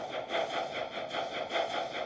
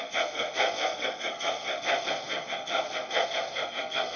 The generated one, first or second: second